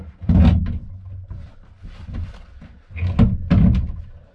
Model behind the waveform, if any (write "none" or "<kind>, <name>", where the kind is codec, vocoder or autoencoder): none